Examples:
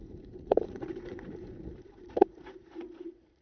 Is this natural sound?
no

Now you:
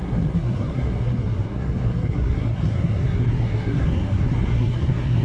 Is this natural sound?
no